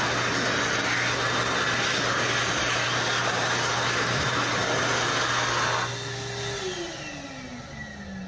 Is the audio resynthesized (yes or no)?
no